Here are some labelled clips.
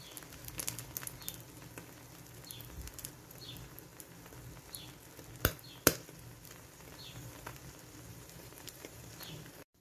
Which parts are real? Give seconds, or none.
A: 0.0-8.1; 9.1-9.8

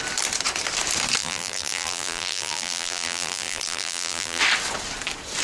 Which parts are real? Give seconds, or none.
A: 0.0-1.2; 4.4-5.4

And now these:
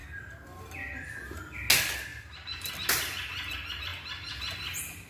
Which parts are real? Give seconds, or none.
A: 0.0-2.1; 2.7-5.1